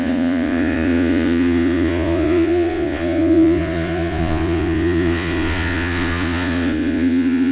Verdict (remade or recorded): remade